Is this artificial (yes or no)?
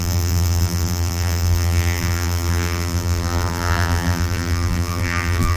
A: yes